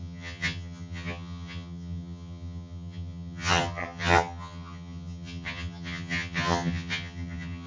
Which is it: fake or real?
fake